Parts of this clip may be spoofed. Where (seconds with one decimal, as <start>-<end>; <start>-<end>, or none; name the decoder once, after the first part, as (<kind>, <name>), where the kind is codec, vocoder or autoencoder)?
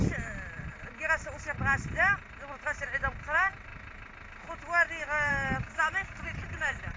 none